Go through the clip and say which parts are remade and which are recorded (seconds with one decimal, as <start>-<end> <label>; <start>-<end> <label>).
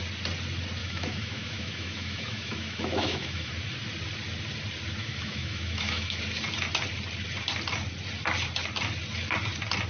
0.0-0.8 recorded; 0.8-3.5 remade; 3.5-5.0 recorded; 5.0-6.2 remade; 6.2-9.9 recorded